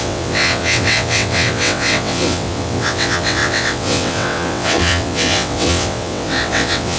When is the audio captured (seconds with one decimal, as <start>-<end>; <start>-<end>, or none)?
none